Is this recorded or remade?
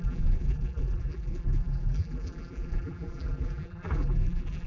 remade